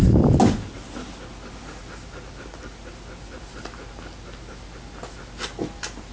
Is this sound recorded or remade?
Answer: recorded